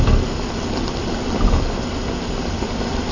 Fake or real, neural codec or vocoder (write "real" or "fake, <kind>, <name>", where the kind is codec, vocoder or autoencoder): real